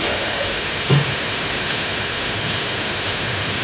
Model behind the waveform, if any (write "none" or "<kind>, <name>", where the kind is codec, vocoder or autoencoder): autoencoder, DAC-VAE